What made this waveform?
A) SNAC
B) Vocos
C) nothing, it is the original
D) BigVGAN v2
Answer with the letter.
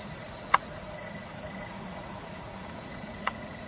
B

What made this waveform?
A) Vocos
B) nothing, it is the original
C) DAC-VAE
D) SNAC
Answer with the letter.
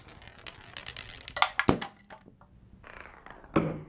B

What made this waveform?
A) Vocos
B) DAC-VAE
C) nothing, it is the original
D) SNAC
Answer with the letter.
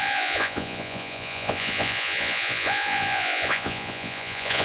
A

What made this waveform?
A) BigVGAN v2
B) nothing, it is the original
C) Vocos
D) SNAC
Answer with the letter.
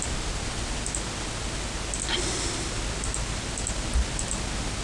B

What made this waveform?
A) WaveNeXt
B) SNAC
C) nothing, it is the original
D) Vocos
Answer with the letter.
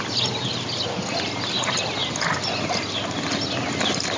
C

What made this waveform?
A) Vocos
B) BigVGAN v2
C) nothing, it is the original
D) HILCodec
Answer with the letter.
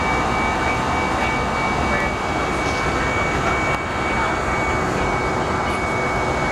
C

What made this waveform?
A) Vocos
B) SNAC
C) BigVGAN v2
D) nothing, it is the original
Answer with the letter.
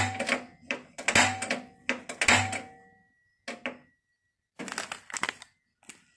D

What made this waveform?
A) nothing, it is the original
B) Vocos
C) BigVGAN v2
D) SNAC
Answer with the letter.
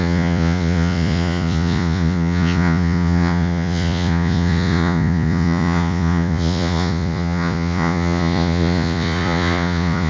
B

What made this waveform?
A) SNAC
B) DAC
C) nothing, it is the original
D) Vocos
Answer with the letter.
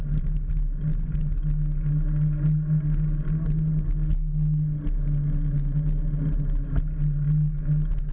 C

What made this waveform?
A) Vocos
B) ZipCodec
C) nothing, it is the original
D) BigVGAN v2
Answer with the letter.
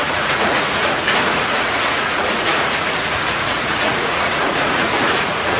A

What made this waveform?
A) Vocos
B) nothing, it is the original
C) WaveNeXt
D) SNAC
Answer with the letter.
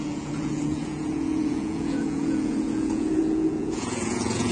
A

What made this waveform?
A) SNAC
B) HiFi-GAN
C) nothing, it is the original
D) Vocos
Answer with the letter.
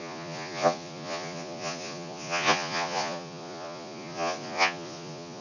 D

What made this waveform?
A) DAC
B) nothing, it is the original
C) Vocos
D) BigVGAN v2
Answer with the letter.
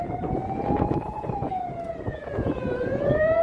C